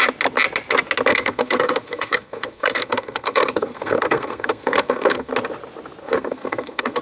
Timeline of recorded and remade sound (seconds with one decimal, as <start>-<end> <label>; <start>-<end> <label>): 0.0-1.1 recorded; 1.1-5.3 remade; 5.3-6.0 recorded; 6.0-7.0 remade